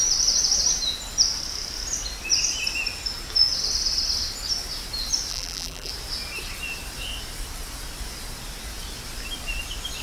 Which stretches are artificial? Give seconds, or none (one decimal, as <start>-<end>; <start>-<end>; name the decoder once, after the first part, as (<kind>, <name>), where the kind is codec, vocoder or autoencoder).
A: 5.3-5.9 (vocoder, BigVGAN v2)